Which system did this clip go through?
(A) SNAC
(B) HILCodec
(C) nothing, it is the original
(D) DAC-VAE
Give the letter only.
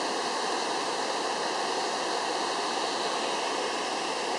C